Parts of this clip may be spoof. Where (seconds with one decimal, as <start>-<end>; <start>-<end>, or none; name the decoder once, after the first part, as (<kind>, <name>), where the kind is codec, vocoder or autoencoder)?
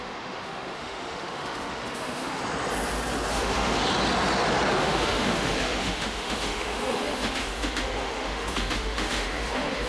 0.0-2.4 (autoencoder, DAC-VAE); 3.3-3.8; 4.8-9.9